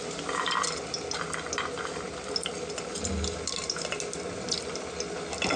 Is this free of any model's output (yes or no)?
yes